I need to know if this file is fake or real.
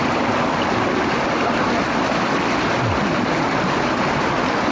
real